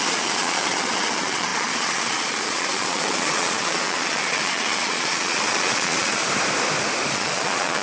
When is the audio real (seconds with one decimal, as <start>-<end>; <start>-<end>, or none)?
6.2-7.1